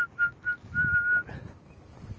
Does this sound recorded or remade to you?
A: recorded